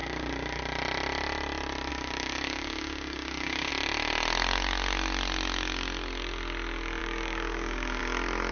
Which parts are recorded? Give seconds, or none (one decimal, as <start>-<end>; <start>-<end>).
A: 0.6-1.9; 3.7-7.0; 8.0-8.5